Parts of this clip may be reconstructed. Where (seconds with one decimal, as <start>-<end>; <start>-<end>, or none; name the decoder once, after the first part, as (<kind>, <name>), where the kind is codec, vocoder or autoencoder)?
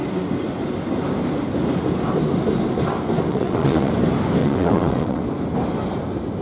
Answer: 3.3-3.9 (vocoder, WaveNeXt); 4.4-5.2